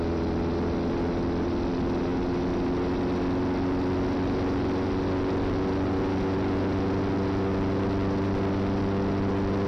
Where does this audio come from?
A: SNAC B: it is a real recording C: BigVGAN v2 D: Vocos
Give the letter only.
B